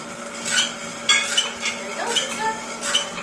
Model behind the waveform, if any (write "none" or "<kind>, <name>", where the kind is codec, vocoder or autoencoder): none